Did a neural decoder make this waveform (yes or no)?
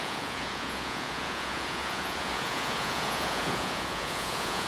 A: yes